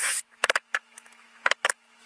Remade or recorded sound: remade